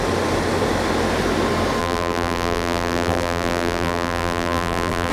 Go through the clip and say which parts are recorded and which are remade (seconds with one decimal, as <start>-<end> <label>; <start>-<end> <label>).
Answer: 0.0-1.8 recorded; 1.8-5.1 remade